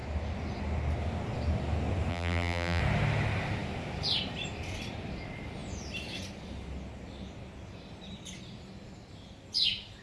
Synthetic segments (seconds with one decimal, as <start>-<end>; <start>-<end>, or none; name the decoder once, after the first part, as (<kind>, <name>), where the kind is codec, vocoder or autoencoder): 2.1-2.8 (vocoder, BigVGAN v2)